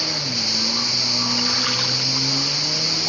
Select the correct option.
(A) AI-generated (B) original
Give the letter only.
B